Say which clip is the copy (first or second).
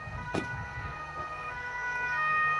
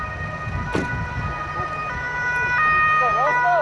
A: first